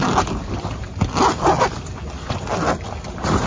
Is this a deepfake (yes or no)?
no